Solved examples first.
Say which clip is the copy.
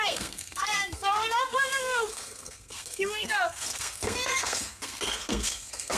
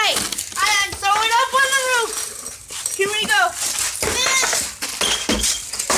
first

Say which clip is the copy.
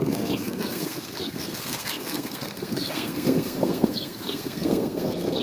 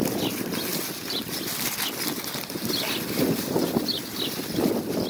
first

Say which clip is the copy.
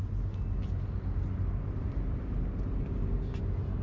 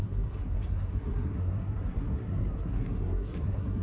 second